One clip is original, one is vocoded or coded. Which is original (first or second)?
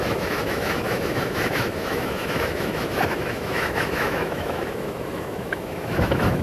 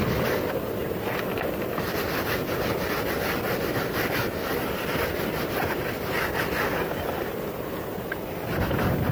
second